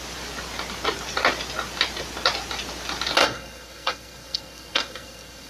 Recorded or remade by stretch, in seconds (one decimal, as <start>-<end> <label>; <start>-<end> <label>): 0.0-3.2 recorded; 3.2-5.5 remade